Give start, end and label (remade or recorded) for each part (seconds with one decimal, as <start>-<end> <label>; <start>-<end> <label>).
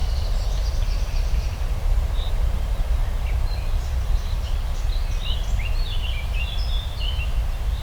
0.0-3.0 remade; 3.0-7.8 recorded